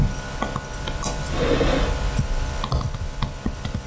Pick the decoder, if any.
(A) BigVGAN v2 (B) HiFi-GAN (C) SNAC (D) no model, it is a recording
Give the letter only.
D